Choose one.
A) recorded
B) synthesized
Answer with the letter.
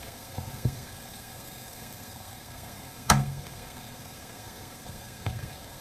B